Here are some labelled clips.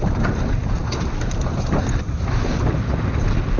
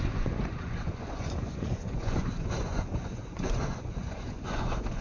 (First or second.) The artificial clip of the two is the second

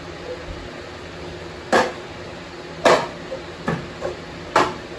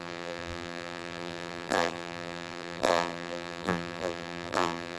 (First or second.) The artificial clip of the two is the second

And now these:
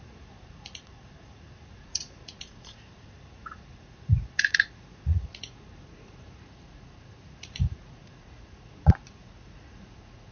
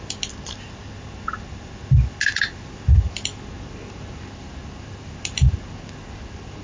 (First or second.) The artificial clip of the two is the first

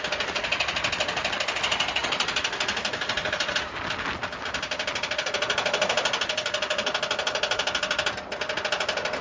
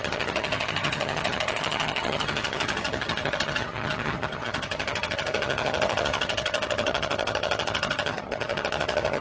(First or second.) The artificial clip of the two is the second